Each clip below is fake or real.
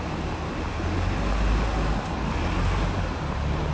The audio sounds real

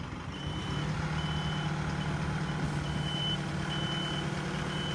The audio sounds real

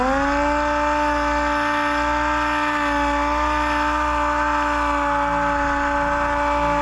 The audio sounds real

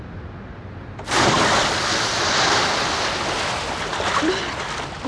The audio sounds real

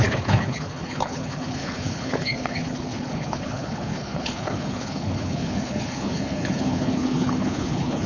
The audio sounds fake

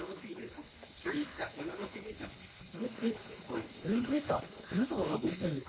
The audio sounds fake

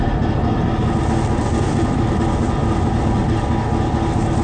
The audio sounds real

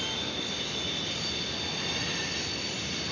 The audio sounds real